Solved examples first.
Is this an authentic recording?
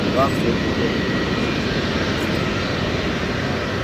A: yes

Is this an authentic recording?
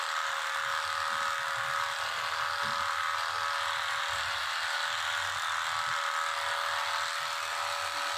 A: yes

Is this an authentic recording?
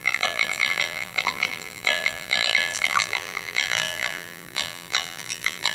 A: no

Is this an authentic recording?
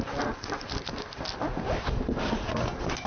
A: yes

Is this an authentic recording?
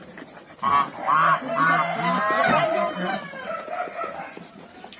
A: yes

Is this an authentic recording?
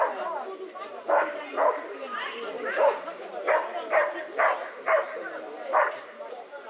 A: no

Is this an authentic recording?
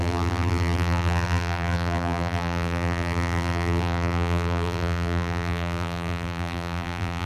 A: no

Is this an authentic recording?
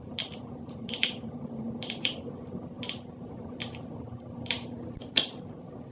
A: no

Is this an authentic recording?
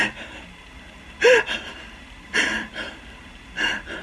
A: no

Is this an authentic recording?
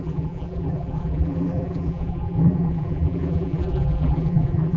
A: no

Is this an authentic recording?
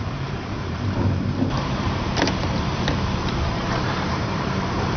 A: no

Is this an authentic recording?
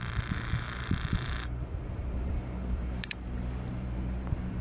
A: no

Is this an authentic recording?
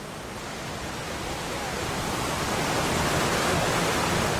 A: yes